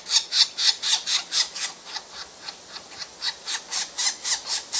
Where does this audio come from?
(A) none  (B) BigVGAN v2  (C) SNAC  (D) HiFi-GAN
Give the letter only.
A